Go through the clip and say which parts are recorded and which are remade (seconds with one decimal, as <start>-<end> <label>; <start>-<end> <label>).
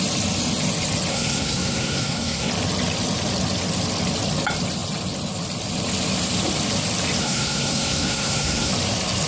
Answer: 0.0-1.1 recorded; 1.1-2.5 remade; 2.5-7.2 recorded; 7.2-8.7 remade; 8.7-9.3 recorded